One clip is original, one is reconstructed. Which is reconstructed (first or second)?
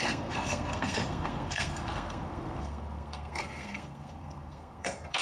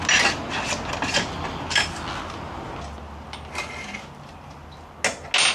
first